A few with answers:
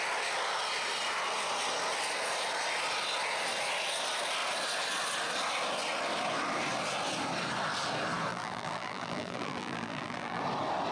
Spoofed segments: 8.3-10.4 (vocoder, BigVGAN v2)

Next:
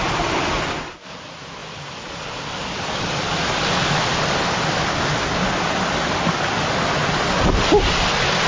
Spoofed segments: none

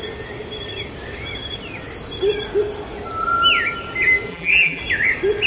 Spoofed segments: 4.3-4.8 (vocoder, BigVGAN v2)

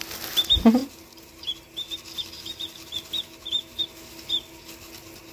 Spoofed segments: none

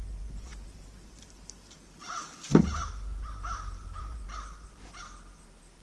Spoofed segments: 0.0-5.8 (vocoder, BigVGAN v2)

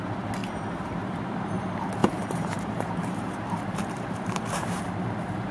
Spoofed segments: 2.0-4.8 (vocoder, BigVGAN v2)